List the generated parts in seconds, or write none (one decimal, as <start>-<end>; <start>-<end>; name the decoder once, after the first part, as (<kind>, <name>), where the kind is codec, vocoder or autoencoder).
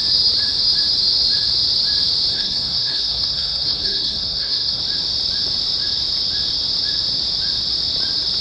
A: 2.3-4.8 (codec, SNAC)